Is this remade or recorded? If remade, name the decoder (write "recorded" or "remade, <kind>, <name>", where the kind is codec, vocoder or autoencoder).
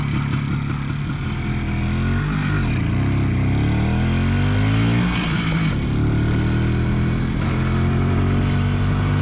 recorded